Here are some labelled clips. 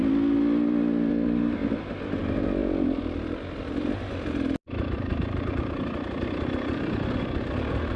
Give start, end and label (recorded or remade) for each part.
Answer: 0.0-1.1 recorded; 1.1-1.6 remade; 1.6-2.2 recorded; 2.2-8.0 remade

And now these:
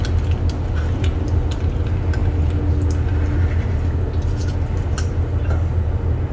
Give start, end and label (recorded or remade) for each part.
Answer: 0.0-6.3 recorded

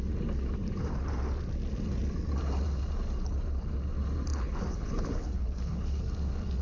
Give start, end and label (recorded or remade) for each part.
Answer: 0.0-4.3 recorded; 4.3-6.0 remade; 6.0-6.6 recorded

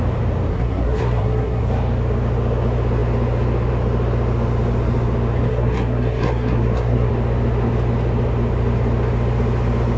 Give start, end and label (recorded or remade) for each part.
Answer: 0.0-0.5 recorded; 0.5-1.6 remade; 1.6-5.5 recorded; 5.5-7.1 remade; 7.1-10.0 recorded

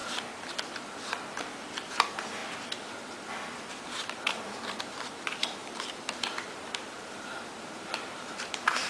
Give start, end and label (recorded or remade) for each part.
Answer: 0.0-1.9 recorded; 1.9-2.4 remade; 2.4-3.7 recorded; 3.7-8.9 remade